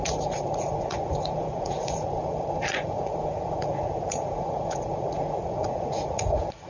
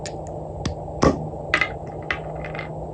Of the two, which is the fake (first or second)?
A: first